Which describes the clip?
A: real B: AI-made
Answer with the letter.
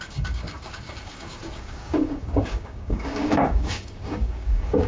B